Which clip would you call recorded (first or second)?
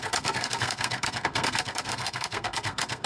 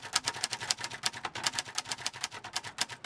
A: second